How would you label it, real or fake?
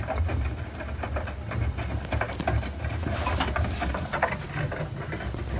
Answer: real